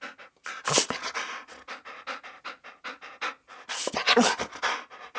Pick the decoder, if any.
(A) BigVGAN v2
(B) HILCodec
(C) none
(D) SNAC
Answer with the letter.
C